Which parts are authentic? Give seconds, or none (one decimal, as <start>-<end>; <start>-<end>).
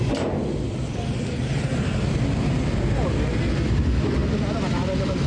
0.0-5.3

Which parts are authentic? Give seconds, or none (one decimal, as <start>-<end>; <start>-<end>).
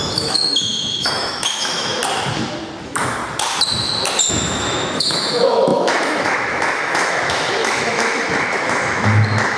2.0-2.8; 3.2-4.3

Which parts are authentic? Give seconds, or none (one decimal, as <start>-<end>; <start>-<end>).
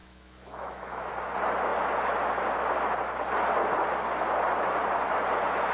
1.1-5.7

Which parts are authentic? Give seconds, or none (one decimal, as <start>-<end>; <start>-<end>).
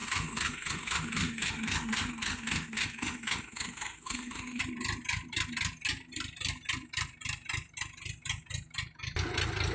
4.6-9.7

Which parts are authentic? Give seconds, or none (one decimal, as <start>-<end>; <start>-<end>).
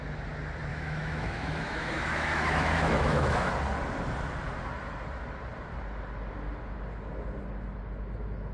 0.0-0.7; 3.5-8.5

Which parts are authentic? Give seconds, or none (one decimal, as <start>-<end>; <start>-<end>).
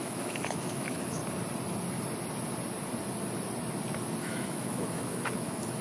1.2-4.2